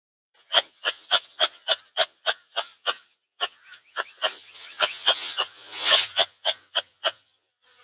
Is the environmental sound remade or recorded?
remade